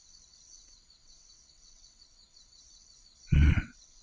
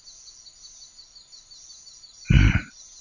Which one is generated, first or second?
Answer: first